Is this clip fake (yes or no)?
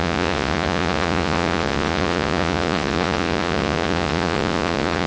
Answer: yes